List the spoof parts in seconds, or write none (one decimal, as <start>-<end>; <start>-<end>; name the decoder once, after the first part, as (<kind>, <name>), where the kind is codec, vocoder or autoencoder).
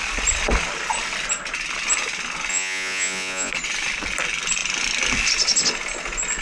2.5-3.5 (vocoder, Vocos)